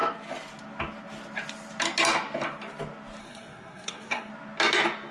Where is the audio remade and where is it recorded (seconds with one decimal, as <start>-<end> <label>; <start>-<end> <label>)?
0.0-3.2 recorded; 3.2-4.3 remade; 4.3-5.1 recorded

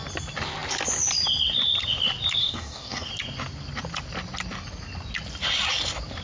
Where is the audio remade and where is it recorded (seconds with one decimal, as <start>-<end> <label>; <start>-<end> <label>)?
0.0-2.4 recorded; 2.4-3.1 remade; 3.1-6.2 recorded

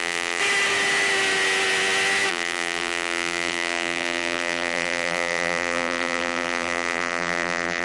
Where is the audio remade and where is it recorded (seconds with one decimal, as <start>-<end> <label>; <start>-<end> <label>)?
0.0-0.4 remade; 0.4-2.3 recorded; 2.3-7.8 remade

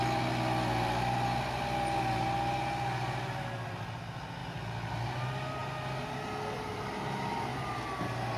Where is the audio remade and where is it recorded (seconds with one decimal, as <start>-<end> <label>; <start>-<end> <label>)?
0.0-8.4 recorded